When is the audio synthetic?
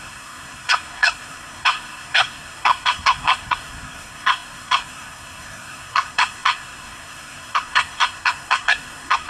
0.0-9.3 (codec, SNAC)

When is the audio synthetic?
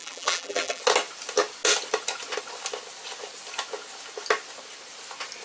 0.0-0.8 (vocoder, BigVGAN v2)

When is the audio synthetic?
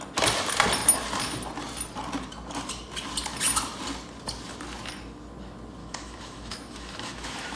5.8-7.6 (autoencoder, DAC-VAE)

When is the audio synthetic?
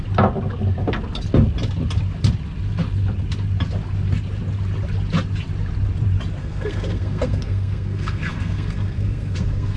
6.4-9.8 (codec, SNAC)